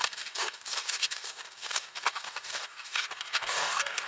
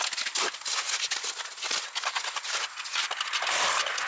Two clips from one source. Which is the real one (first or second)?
second